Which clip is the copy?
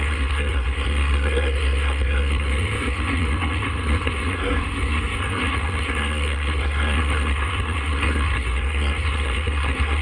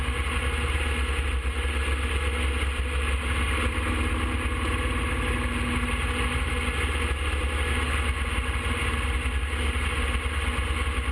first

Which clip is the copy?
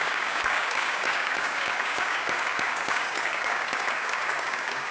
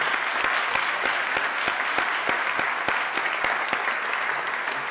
first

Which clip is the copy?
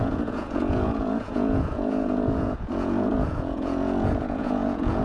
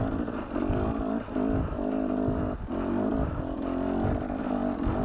first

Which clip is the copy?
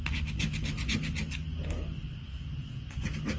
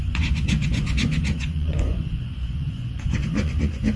second